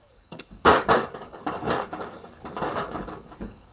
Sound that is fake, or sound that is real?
fake